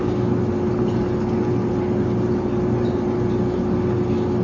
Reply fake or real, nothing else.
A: real